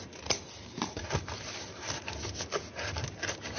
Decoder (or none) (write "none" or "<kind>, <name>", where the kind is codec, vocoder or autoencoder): none